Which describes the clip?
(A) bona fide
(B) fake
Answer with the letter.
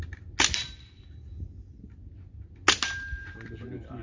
A